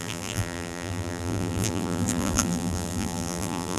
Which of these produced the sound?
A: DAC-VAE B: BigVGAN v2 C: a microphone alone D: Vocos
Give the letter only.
B